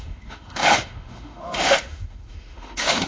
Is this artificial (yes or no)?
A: yes